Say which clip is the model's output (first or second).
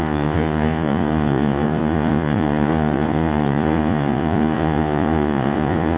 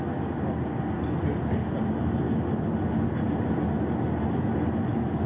first